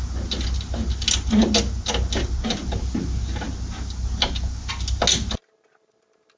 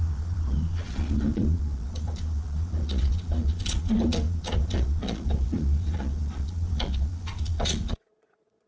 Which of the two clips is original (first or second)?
first